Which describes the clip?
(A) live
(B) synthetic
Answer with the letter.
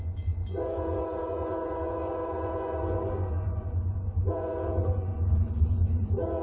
B